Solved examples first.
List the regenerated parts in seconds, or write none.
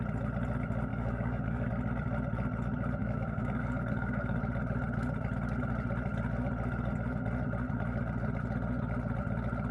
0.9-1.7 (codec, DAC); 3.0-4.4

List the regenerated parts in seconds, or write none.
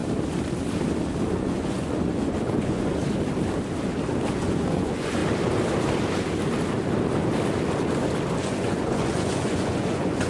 1.3-3.0 (vocoder, Vocos); 4.4-5.2; 8.4-10.3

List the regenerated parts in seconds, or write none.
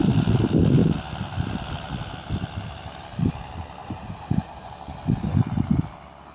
3.8-4.7 (vocoder, Vocos)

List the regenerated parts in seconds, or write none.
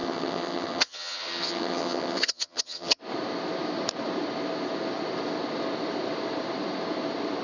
0.0-3.0 (vocoder, HiFi-GAN)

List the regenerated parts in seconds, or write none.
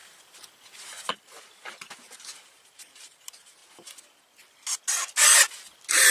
0.0-3.6 (vocoder, BigVGAN v2)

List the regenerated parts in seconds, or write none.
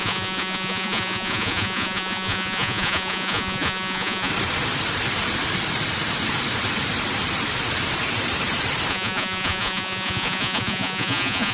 0.0-4.3 (vocoder, Vocos); 8.9-11.5